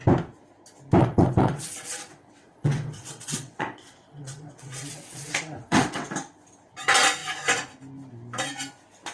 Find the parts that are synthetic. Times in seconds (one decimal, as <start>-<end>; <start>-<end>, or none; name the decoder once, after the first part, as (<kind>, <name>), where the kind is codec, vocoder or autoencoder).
1.0-6.1 (vocoder, WaveNeXt)